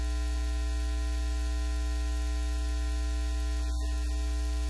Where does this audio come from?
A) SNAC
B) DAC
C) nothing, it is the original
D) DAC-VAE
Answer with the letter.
C